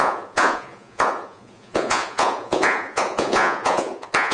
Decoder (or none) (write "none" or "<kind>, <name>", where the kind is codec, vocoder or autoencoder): vocoder, Vocos